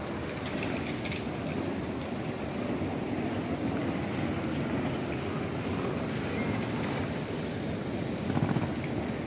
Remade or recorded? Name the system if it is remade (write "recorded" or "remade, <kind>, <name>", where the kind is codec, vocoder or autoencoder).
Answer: recorded